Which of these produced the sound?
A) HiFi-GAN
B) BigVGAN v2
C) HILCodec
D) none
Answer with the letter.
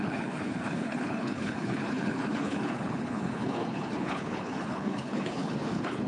C